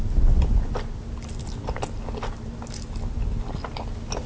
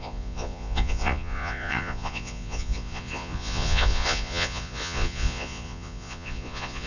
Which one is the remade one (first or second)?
second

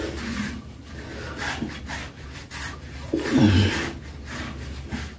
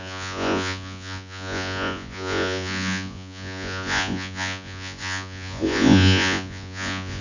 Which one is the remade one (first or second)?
second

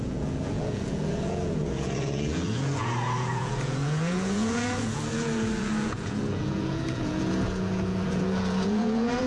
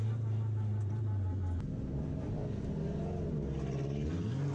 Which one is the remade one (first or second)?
first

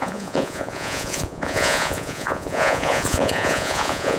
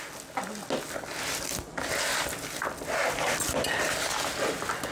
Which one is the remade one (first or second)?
first